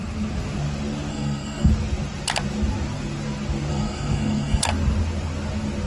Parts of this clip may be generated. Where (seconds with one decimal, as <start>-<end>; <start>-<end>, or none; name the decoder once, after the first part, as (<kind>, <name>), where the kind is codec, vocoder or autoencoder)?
1.1-1.7 (codec, SNAC); 3.7-4.7